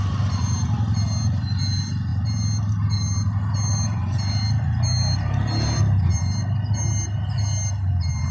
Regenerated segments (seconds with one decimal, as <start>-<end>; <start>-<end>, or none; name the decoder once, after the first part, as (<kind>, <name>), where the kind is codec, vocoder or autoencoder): none

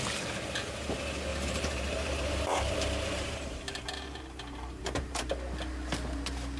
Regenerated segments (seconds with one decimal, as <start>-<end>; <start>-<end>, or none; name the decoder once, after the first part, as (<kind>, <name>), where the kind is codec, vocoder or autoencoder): 1.3-5.3 (vocoder, BigVGAN v2)

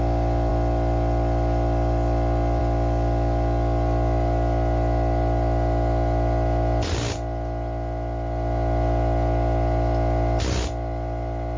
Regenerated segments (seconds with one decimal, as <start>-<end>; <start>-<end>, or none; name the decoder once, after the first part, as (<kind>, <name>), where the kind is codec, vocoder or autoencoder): none

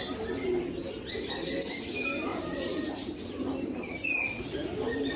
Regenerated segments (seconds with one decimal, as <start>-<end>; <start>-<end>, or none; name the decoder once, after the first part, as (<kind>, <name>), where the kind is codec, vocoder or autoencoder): 2.3-3.2 (vocoder, BigVGAN v2)

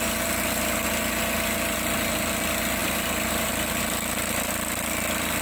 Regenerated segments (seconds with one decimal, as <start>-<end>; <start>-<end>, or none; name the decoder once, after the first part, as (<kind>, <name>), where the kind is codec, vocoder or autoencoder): 2.8-3.8 (vocoder, BigVGAN v2)

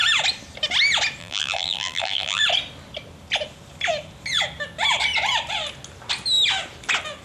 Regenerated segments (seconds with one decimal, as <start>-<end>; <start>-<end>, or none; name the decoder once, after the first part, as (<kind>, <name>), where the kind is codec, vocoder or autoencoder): 1.2-2.4 (vocoder, BigVGAN v2)

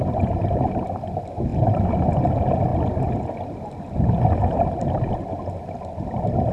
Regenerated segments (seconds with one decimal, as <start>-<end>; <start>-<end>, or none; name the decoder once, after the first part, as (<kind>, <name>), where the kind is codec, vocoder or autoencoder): 1.5-2.0 (vocoder, BigVGAN v2)